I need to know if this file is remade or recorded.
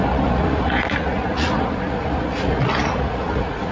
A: remade